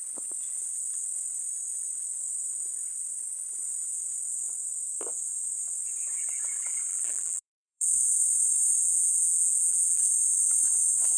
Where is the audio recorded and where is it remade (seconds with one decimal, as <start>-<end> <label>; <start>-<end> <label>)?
0.0-6.9 recorded; 6.9-7.9 remade; 7.9-8.8 recorded; 8.8-10.0 remade; 10.0-11.2 recorded

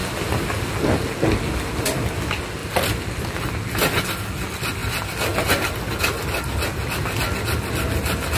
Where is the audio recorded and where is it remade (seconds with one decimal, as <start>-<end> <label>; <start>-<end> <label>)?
0.0-0.6 remade; 0.6-2.6 recorded; 2.6-3.2 remade; 3.2-8.4 recorded

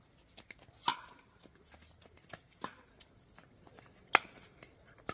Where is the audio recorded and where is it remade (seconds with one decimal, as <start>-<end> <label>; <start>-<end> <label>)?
0.0-5.1 recorded

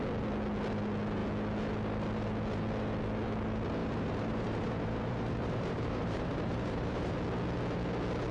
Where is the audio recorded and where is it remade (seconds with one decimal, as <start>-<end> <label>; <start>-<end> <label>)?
0.0-3.8 recorded; 3.8-7.2 remade; 7.2-8.3 recorded

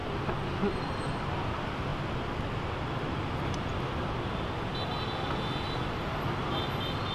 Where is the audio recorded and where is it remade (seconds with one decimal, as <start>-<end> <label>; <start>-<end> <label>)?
0.0-7.1 recorded

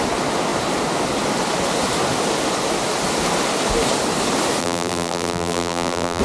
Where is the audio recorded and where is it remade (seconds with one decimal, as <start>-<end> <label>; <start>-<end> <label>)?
0.0-4.6 recorded; 4.6-6.2 remade

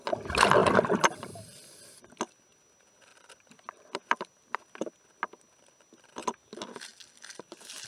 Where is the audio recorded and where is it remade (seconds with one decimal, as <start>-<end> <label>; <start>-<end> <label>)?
0.0-0.6 recorded; 0.6-2.2 remade; 2.2-3.1 recorded; 3.1-4.6 remade; 4.6-7.9 recorded